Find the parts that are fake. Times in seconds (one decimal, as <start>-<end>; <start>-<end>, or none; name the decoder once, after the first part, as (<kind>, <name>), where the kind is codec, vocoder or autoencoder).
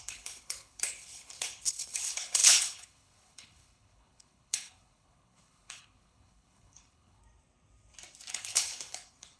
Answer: 0.0-7.2 (codec, HILCodec); 8.3-9.4